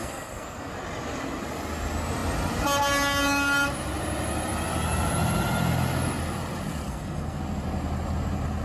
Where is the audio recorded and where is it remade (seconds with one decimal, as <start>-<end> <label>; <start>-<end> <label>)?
0.0-0.7 remade; 0.7-6.9 recorded; 6.9-7.4 remade; 7.4-8.6 recorded